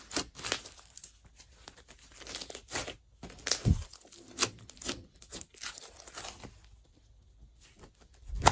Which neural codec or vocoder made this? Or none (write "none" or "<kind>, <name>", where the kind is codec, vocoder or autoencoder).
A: none